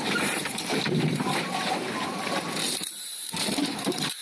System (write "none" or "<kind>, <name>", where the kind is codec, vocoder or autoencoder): vocoder, BigVGAN v2